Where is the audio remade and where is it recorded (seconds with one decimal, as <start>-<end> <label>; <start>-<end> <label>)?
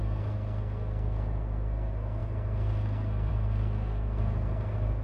0.0-5.0 remade